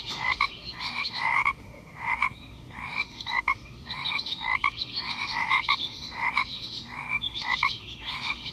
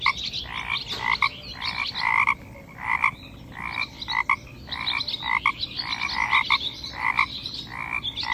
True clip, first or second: second